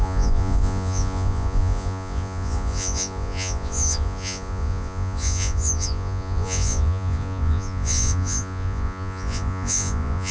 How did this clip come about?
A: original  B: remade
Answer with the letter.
B